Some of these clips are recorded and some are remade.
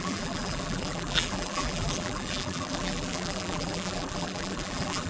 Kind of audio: remade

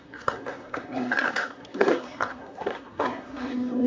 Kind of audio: remade